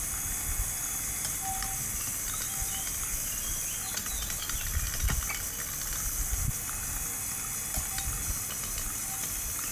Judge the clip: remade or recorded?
recorded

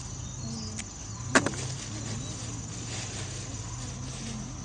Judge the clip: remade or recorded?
recorded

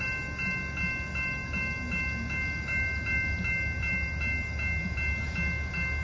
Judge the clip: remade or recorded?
recorded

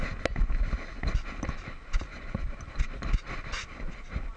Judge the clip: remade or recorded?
recorded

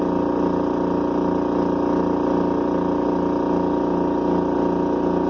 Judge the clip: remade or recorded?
recorded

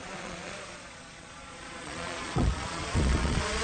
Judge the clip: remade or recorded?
remade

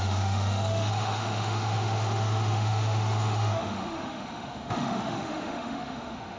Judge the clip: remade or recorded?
remade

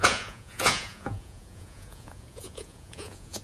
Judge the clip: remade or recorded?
remade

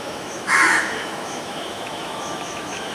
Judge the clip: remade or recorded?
remade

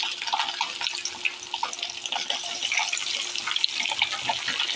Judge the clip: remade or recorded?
recorded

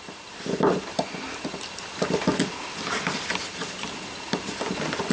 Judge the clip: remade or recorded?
recorded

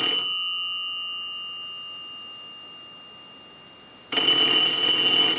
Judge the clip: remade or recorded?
recorded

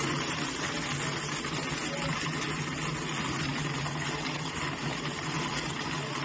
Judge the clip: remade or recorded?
recorded